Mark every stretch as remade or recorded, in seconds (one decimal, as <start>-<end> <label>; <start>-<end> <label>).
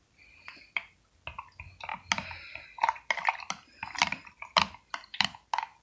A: 0.0-5.8 recorded